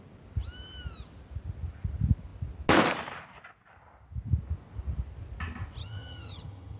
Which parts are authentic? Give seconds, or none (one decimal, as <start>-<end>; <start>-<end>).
0.0-5.8